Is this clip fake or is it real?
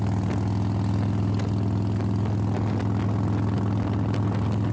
real